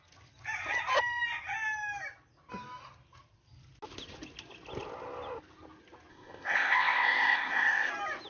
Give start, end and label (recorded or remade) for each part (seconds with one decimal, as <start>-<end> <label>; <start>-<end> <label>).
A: 0.0-6.1 recorded; 6.1-7.9 remade; 7.9-8.3 recorded